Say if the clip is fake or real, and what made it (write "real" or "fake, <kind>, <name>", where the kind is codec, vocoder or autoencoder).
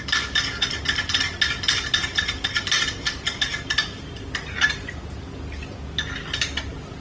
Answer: real